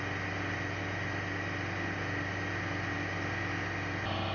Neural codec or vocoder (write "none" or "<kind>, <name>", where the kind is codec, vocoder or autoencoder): none